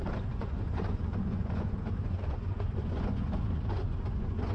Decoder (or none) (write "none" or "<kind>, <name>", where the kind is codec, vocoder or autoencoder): vocoder, Vocos